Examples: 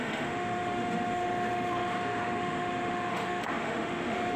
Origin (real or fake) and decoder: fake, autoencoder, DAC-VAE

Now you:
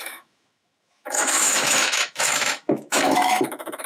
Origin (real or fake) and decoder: fake, autoencoder, DAC-VAE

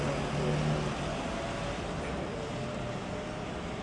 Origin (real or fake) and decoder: real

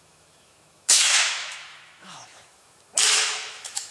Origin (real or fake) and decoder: fake, autoencoder, DAC-VAE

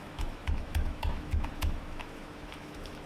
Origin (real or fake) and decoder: fake, autoencoder, DAC-VAE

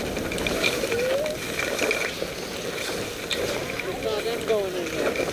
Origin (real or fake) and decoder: real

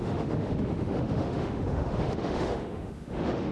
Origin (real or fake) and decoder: fake, autoencoder, DAC-VAE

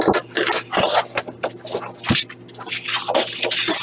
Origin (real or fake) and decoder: real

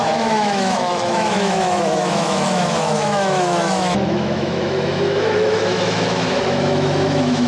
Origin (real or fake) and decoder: fake, autoencoder, DAC-VAE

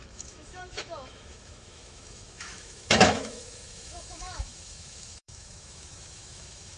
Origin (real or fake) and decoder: fake, autoencoder, DAC-VAE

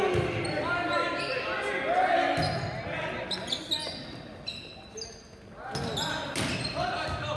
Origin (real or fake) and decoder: real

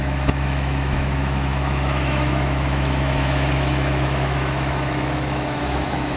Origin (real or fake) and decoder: fake, autoencoder, DAC-VAE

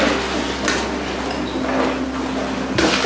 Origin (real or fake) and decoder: real